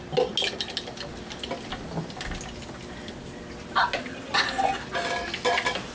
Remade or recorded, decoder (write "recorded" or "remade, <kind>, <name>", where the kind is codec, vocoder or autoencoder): recorded